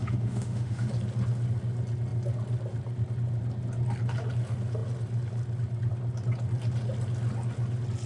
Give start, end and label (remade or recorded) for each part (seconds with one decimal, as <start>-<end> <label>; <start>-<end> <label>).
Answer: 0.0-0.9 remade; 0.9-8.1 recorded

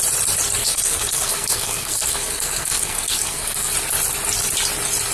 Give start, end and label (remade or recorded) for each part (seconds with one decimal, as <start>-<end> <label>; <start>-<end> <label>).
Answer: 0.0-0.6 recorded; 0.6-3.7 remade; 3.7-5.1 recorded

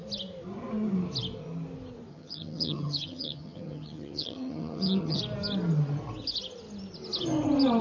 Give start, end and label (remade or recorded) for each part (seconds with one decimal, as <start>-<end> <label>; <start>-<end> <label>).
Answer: 0.0-2.1 recorded; 2.1-5.2 remade; 5.2-7.8 recorded

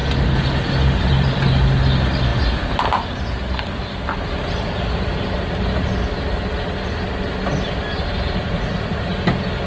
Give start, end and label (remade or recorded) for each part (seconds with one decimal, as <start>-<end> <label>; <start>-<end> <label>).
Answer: 0.0-8.4 recorded; 8.4-9.1 remade; 9.1-9.7 recorded

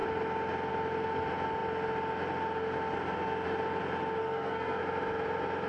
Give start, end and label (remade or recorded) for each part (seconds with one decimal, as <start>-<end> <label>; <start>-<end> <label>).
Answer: 0.0-4.2 recorded; 4.2-4.8 remade; 4.8-5.7 recorded

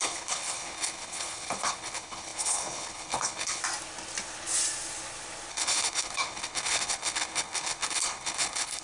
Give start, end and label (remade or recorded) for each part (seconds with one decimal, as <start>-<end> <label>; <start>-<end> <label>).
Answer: 0.0-3.6 remade; 3.6-5.5 recorded; 5.5-8.8 remade